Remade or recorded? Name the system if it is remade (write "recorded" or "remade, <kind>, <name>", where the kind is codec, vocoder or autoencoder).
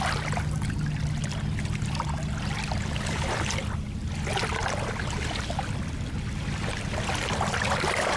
recorded